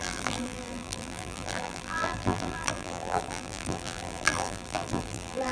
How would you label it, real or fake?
fake